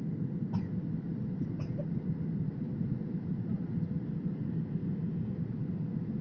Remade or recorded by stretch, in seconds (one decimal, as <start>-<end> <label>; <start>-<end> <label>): 0.0-6.2 recorded